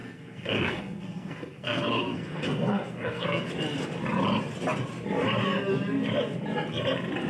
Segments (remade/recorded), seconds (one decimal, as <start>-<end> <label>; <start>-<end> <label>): 0.0-3.5 remade; 3.5-7.3 recorded